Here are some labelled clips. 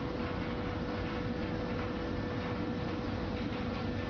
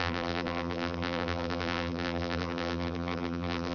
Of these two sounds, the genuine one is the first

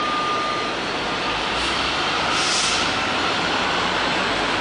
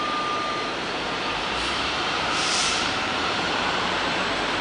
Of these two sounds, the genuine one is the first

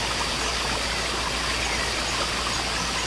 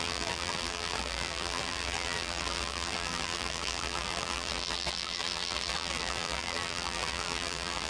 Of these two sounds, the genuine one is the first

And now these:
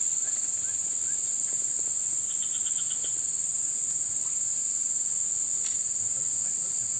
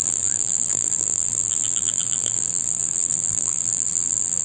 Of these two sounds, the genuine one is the first